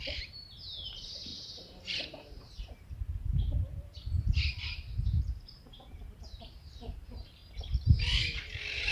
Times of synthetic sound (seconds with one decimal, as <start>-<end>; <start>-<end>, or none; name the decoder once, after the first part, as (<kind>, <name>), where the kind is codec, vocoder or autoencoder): 0.0-7.4 (vocoder, BigVGAN v2); 8.4-8.9